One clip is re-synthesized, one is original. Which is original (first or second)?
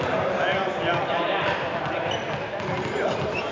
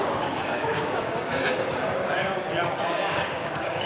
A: first